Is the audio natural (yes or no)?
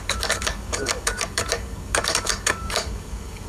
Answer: no